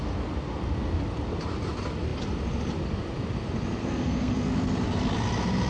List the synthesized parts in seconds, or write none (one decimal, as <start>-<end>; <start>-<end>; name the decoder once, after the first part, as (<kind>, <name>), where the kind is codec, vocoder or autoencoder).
3.8-4.5 (codec, SNAC)